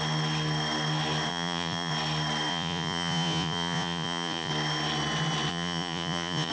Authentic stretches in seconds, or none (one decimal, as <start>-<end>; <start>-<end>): 0.0-1.3; 1.9-2.5; 4.5-5.5